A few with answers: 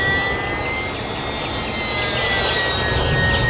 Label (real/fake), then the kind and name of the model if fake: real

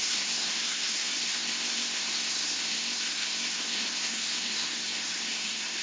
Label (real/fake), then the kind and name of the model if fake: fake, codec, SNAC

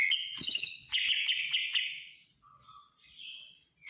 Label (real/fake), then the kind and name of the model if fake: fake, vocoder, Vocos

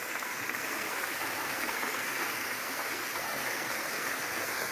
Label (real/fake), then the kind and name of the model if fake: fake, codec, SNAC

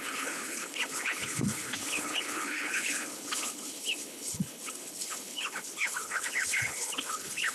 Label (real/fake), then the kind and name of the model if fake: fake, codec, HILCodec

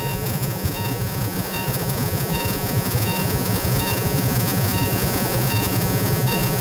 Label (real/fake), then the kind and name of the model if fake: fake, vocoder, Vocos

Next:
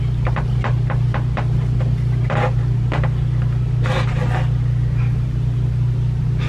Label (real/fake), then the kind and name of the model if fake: real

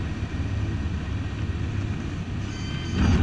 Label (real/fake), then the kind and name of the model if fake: real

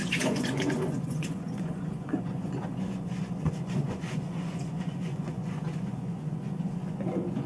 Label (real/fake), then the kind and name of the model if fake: fake, vocoder, Vocos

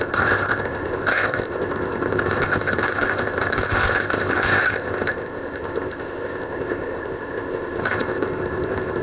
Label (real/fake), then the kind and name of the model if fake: fake, codec, ZipCodec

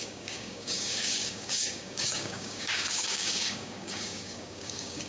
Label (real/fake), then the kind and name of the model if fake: fake, codec, DAC